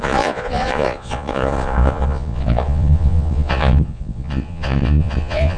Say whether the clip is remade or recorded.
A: remade